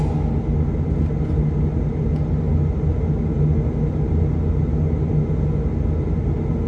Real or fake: real